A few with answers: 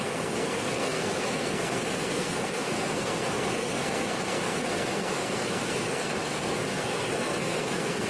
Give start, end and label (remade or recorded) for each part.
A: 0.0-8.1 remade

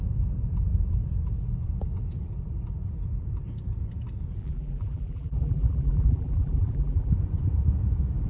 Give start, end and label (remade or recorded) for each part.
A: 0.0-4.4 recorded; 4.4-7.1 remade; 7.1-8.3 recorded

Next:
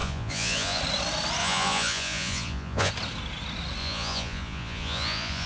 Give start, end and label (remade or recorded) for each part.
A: 0.0-0.8 remade; 0.8-1.4 recorded; 1.4-2.9 remade; 2.9-3.8 recorded; 3.8-5.5 remade

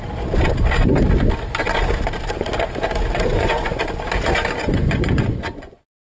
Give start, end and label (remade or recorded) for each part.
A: 0.0-3.3 recorded; 3.3-3.8 remade; 3.8-4.6 recorded; 4.6-6.0 remade

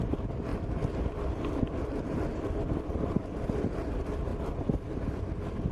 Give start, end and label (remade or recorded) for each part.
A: 0.0-0.5 recorded; 0.5-3.9 remade; 3.9-4.3 recorded; 4.3-5.7 remade

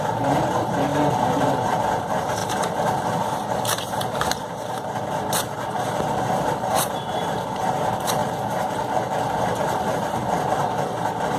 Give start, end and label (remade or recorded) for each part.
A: 0.0-11.4 remade